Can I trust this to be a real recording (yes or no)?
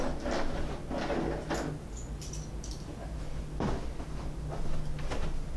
yes